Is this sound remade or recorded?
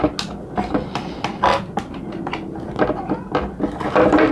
recorded